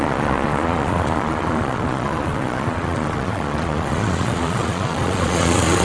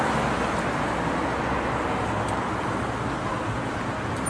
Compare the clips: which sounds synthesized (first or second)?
first